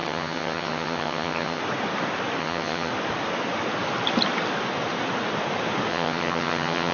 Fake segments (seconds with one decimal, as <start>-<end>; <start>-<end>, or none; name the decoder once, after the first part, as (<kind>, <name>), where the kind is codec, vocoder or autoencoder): 0.0-1.6 (vocoder, HiFi-GAN); 2.4-2.9; 5.9-6.9